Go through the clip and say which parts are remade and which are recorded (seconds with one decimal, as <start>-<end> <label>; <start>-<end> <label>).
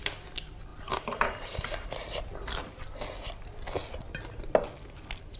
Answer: 0.0-0.7 recorded; 0.7-2.7 remade; 2.7-5.4 recorded